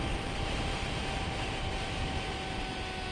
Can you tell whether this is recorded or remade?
recorded